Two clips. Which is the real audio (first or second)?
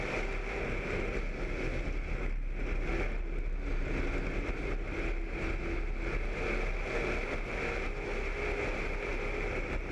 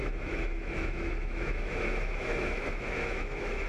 first